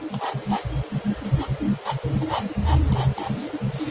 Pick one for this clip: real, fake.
real